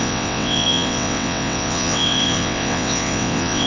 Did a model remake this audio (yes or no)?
yes